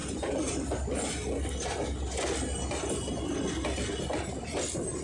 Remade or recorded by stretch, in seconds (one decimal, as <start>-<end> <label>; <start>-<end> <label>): 0.0-5.0 recorded